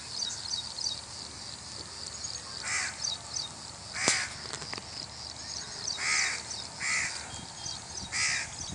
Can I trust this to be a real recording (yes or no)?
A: yes